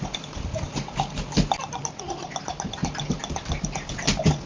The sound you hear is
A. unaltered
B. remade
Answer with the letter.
A